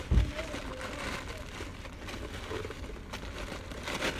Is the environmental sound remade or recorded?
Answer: recorded